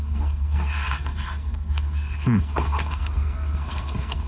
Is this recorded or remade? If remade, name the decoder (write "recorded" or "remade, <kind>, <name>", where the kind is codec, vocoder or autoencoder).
remade, codec, SNAC